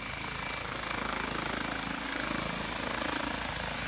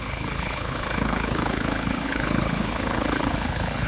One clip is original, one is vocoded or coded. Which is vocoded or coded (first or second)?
second